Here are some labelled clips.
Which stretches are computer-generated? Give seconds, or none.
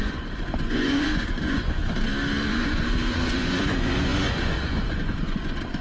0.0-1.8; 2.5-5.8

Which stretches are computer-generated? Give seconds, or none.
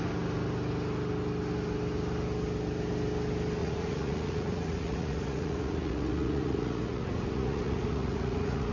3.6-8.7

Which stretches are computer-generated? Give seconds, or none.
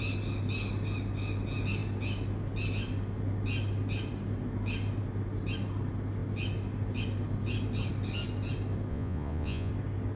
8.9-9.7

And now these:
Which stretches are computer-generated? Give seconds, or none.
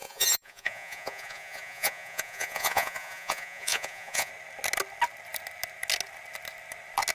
0.0-4.3